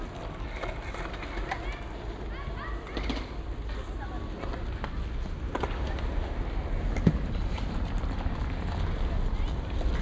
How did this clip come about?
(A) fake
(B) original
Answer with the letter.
B